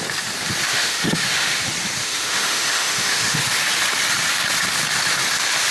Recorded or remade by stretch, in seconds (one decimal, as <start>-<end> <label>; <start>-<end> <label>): 0.0-0.7 recorded; 0.7-1.6 remade; 1.6-2.0 recorded; 2.0-3.4 remade; 3.4-5.7 recorded